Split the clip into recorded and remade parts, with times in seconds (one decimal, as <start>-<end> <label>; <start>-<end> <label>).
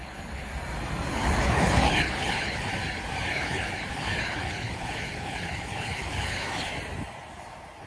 0.0-0.5 remade; 0.5-1.1 recorded; 1.1-2.7 remade; 2.7-3.3 recorded; 3.3-6.7 remade; 6.7-7.9 recorded